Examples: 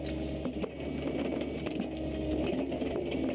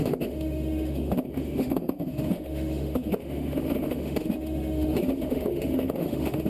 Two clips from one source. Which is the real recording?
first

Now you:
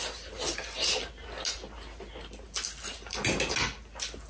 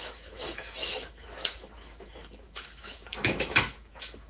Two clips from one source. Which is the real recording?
first